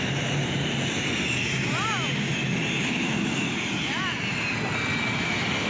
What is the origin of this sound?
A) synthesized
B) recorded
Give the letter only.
B